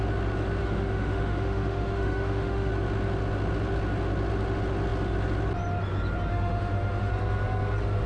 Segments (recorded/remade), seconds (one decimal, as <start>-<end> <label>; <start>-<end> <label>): 0.0-0.6 recorded; 0.6-2.7 remade; 2.7-6.3 recorded; 6.3-7.1 remade; 7.1-8.1 recorded